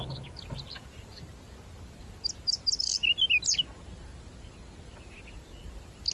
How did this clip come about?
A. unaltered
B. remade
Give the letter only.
A